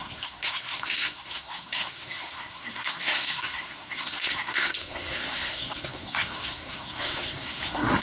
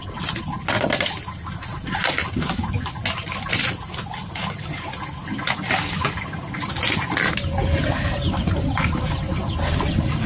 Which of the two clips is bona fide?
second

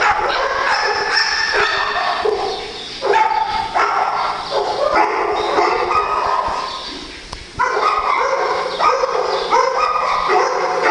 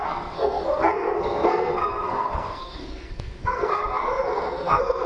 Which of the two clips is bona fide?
first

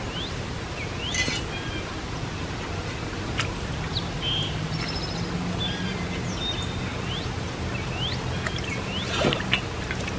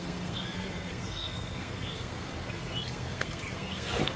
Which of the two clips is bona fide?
first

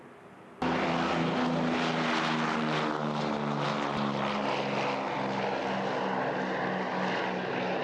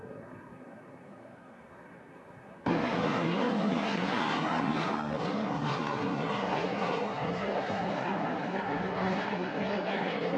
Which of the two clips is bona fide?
first